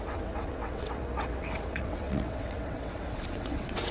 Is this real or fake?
fake